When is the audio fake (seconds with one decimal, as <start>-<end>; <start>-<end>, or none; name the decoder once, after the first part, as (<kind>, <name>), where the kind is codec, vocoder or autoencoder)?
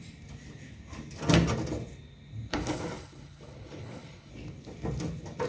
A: 2.5-4.3 (codec, HILCodec)